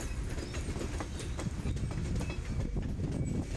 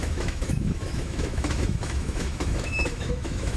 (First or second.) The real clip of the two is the first